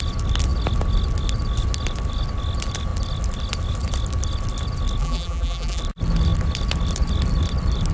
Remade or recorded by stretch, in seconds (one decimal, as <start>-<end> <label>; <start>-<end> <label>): 0.0-5.0 recorded; 5.0-5.8 remade; 5.8-7.9 recorded